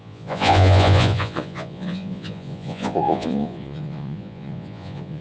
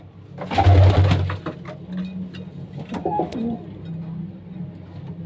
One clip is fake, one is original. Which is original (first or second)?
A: second